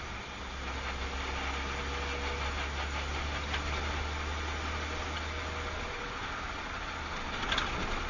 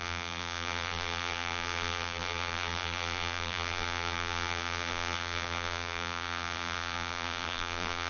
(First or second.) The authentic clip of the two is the first